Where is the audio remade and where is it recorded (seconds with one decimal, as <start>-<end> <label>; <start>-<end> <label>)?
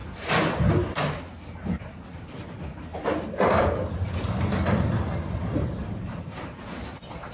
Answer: 0.0-7.3 recorded